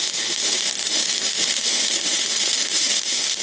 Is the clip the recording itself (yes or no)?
no